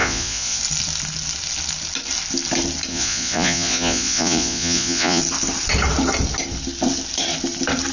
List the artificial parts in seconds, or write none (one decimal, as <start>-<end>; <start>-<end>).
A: 0.0-0.6; 2.9-5.2